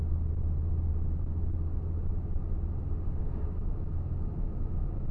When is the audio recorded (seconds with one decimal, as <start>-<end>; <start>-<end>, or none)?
0.0-3.2; 3.7-5.1